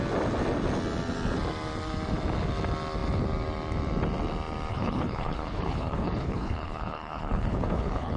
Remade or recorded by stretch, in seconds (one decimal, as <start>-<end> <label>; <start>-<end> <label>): 0.0-4.7 recorded; 4.7-8.2 remade

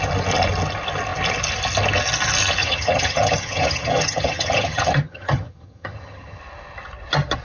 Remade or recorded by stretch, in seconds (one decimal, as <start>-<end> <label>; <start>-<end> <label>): 0.0-2.6 recorded; 2.6-6.4 remade; 6.4-7.4 recorded

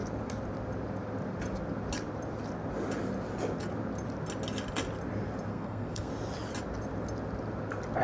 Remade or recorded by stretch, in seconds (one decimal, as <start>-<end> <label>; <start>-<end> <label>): 0.0-5.5 recorded; 5.5-6.1 remade; 6.1-8.0 recorded

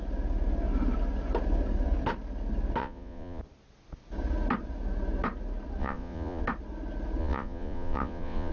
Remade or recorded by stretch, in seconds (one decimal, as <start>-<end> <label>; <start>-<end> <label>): 0.0-2.8 recorded; 2.8-3.4 remade; 3.4-5.8 recorded; 5.8-6.4 remade; 6.4-7.2 recorded; 7.2-8.5 remade

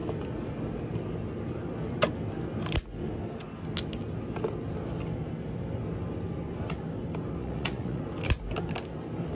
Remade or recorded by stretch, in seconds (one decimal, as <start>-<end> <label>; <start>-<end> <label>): 0.0-7.4 recorded; 7.4-8.0 remade; 8.0-9.3 recorded

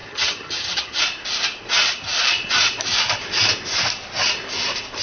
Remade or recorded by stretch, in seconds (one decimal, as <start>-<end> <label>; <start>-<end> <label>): 0.0-1.0 remade; 1.0-5.0 recorded

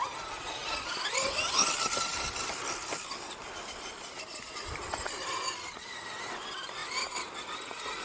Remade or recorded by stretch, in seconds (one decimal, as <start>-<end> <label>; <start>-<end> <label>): 0.0-6.8 remade; 6.8-7.4 recorded; 7.4-8.0 remade